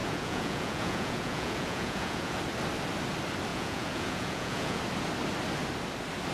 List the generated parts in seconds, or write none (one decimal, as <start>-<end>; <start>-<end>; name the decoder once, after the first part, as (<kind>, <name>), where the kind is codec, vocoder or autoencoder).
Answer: 0.0-2.4 (vocoder, Vocos); 3.5-4.8